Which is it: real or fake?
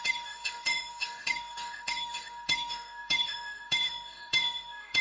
fake